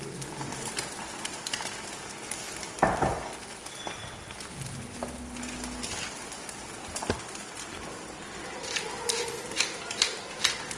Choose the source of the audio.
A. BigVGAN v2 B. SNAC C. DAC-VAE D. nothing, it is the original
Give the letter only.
D